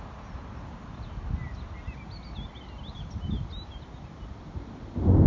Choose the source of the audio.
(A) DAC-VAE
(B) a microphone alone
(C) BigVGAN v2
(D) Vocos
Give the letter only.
B